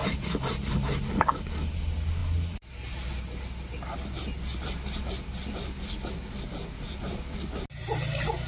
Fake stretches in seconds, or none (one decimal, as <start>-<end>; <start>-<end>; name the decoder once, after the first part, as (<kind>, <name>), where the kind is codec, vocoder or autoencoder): none